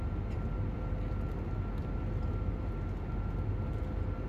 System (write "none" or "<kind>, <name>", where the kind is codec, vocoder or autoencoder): none